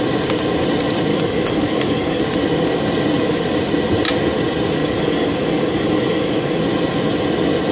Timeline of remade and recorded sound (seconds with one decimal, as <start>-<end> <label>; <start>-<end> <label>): 0.0-1.1 recorded; 1.1-2.2 remade; 2.2-4.8 recorded; 4.8-6.6 remade; 6.6-7.7 recorded